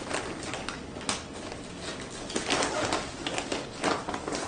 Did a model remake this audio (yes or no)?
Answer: no